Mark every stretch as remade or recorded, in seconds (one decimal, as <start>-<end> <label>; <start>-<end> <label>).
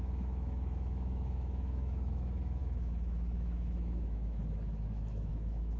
0.0-5.8 remade